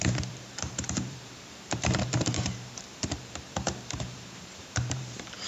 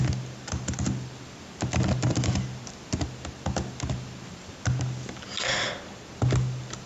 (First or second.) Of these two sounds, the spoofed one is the first